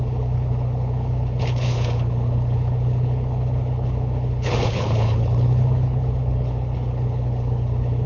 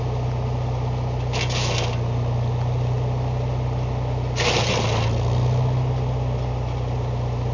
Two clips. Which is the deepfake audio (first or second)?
first